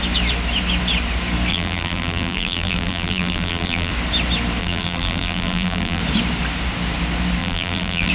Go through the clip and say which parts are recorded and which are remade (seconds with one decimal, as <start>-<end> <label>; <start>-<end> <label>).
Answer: 0.0-1.5 recorded; 1.5-3.9 remade; 3.9-4.6 recorded; 4.6-6.0 remade; 6.0-7.4 recorded; 7.4-8.1 remade